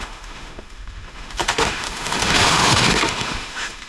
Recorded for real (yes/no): no